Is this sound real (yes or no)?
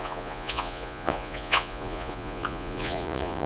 no